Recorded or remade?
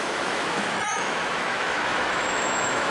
remade